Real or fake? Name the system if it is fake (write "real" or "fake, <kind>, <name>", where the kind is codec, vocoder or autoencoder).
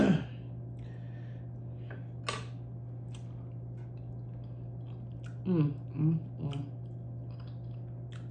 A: real